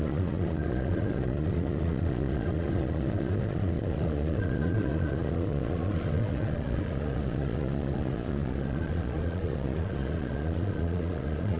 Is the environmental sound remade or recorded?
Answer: remade